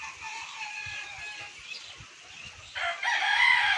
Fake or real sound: real